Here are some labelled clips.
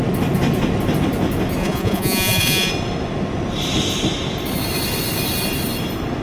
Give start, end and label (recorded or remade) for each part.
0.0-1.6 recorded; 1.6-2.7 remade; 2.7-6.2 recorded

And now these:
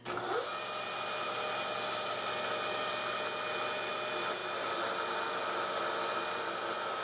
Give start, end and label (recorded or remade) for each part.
0.0-7.0 recorded

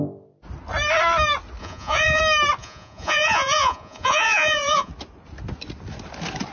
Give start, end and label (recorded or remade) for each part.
0.0-1.6 recorded; 1.6-2.2 remade; 2.2-2.6 recorded; 2.6-4.9 remade; 4.9-6.5 recorded

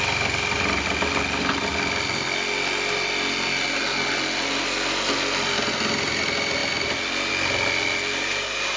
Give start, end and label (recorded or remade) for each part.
0.0-8.8 recorded

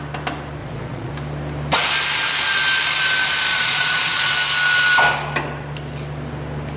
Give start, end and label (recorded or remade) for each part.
0.0-0.6 recorded; 0.6-1.1 remade; 1.1-3.5 recorded; 3.5-4.3 remade; 4.3-6.8 recorded